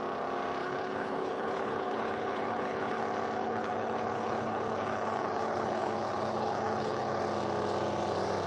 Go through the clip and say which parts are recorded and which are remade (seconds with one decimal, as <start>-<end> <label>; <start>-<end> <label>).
0.0-0.6 recorded; 0.6-3.0 remade; 3.0-3.4 recorded; 3.4-7.2 remade; 7.2-8.5 recorded